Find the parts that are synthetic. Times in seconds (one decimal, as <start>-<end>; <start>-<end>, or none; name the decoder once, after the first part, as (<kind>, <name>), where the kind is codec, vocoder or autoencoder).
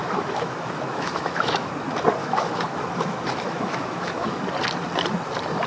0.0-1.7 (autoencoder, DAC-VAE); 2.2-4.4